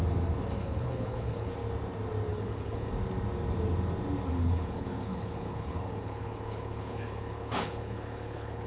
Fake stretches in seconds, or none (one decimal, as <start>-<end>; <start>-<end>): 0.6-1.5; 2.3-2.9; 4.3-8.7